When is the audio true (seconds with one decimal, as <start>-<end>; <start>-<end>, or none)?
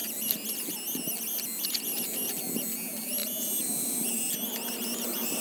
0.0-5.4